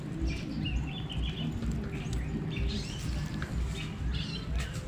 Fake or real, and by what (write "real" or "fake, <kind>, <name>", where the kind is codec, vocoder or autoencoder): real